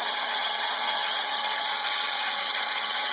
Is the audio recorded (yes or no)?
no